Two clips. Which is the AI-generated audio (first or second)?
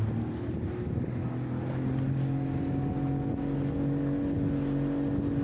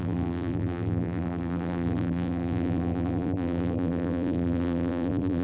second